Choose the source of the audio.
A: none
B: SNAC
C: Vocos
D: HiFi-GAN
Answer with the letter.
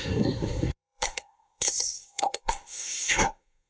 B